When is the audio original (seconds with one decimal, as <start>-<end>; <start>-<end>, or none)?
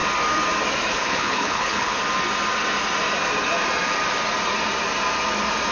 0.0-0.9; 2.0-5.7